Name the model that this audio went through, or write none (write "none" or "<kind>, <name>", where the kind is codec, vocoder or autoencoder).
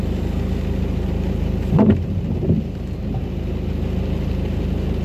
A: none